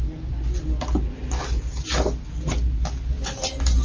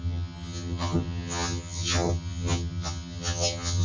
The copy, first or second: second